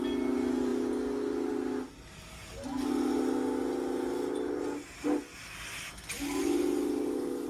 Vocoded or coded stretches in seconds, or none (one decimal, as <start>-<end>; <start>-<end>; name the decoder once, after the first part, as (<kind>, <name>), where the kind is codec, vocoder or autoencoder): none